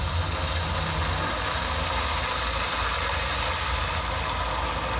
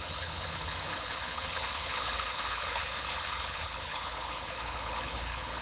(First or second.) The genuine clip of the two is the first